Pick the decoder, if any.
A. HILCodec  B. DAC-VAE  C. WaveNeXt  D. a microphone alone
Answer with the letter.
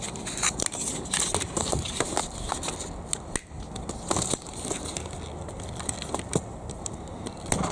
D